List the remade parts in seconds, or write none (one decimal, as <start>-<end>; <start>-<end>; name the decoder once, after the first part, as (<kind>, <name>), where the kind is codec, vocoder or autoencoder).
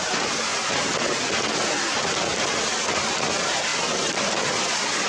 none